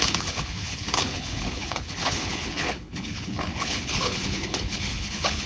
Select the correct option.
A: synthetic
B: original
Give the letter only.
A